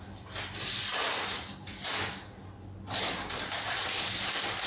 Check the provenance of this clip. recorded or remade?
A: remade